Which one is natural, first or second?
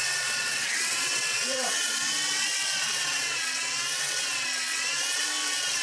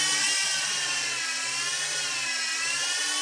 second